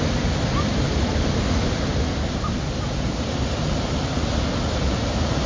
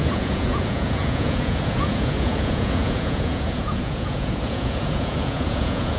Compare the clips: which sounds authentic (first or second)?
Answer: first